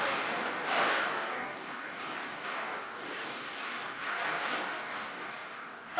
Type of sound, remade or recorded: remade